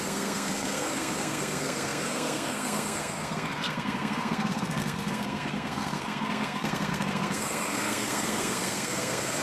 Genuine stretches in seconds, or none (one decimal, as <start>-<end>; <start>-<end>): none